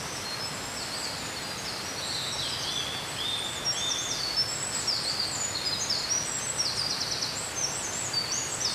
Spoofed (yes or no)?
no